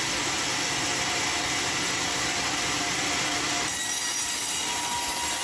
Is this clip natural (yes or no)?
yes